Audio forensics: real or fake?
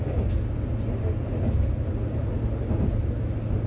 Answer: real